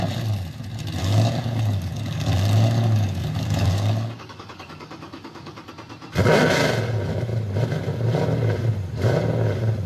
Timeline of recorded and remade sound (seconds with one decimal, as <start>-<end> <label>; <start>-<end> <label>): 0.0-1.0 recorded; 1.0-5.7 remade; 5.7-9.9 recorded